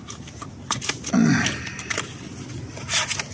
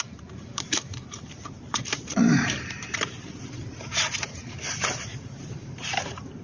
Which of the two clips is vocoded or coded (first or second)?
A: second